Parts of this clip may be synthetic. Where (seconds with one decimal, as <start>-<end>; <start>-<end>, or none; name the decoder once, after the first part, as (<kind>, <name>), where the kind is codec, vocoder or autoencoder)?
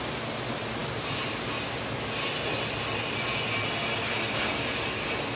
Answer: none